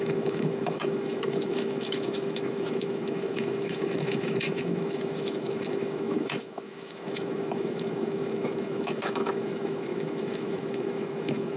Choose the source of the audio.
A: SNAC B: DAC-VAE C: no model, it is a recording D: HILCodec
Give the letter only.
B